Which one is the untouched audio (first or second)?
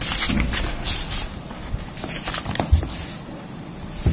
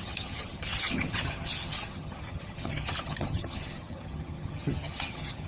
first